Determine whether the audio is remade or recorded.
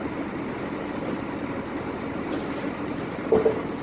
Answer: recorded